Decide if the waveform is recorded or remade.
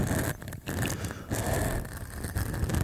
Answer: recorded